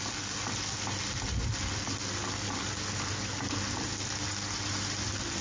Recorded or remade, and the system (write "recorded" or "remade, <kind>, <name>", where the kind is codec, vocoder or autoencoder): recorded